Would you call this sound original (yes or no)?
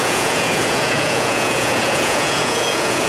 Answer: no